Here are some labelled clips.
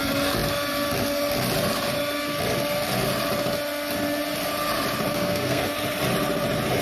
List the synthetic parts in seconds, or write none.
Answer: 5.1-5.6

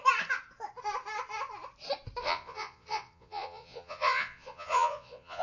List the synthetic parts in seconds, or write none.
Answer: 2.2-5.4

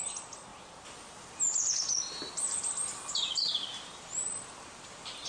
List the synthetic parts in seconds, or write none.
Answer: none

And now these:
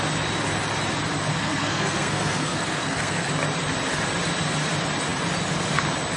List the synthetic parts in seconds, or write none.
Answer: 1.3-3.3

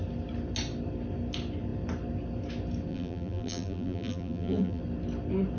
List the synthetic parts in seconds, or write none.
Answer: 2.9-4.8

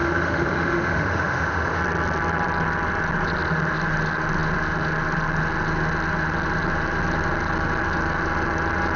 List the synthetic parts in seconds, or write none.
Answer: 0.0-1.8

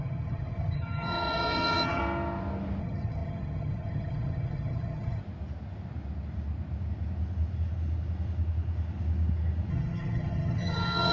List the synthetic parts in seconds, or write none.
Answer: 0.0-2.0; 2.8-5.2; 9.7-11.1

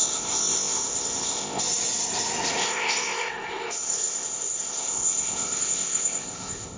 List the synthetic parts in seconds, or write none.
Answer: 0.0-1.6; 2.6-6.8